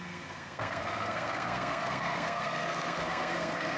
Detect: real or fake fake